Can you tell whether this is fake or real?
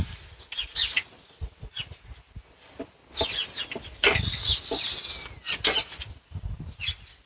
real